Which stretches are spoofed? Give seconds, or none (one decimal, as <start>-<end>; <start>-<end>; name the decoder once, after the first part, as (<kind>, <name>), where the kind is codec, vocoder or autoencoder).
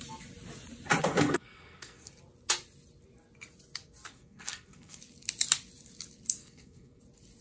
1.1-2.1 (codec, SNAC); 4.1-5.0; 6.4-7.0